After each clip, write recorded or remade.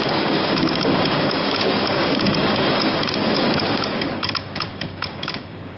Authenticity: remade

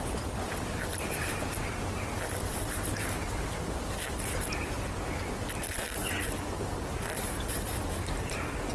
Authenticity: recorded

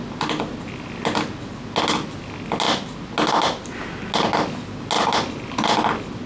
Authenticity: recorded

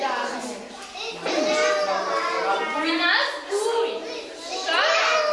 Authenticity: recorded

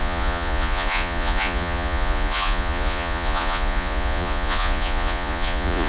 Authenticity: remade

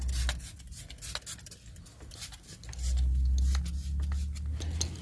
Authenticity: recorded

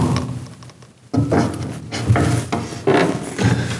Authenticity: recorded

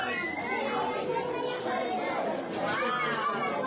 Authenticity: recorded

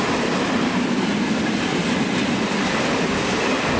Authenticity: recorded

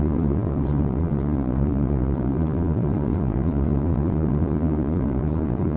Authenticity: remade